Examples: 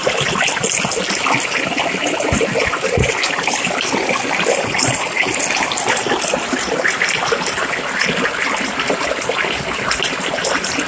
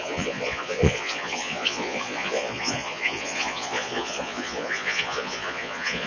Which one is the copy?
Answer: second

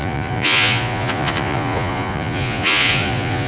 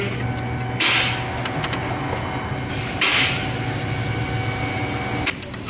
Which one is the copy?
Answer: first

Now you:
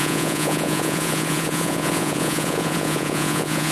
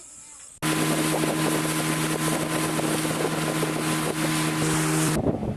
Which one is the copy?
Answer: first